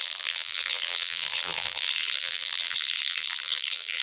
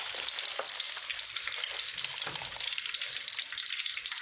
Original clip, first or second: second